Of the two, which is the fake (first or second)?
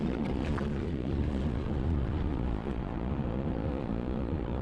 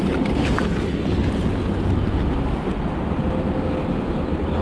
first